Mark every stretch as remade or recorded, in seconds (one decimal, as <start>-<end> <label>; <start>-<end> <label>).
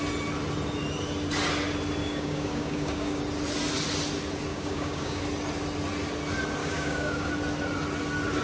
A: 0.0-2.0 recorded; 2.0-3.2 remade; 3.2-4.5 recorded; 4.5-5.2 remade; 5.2-6.6 recorded; 6.6-7.3 remade; 7.3-8.4 recorded